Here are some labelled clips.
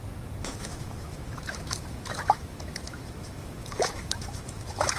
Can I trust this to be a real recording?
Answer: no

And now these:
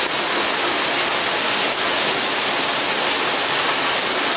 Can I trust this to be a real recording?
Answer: yes